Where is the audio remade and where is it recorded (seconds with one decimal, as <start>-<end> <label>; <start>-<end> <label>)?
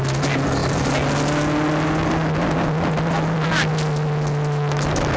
0.0-5.2 recorded